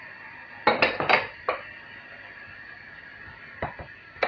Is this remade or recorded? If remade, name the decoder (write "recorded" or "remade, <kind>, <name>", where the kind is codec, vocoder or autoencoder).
recorded